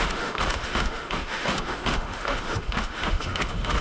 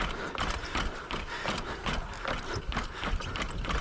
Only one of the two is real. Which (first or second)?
second